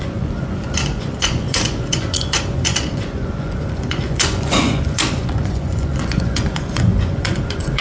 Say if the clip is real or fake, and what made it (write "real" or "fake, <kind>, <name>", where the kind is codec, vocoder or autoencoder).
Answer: fake, vocoder, Vocos